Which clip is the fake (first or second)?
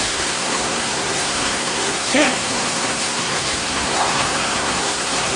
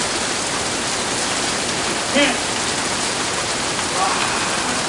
first